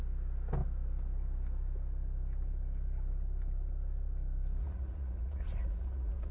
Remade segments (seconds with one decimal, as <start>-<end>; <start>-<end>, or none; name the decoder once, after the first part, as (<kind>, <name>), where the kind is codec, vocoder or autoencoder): 4.6-6.3 (vocoder, Vocos)